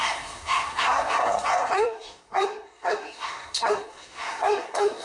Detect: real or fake fake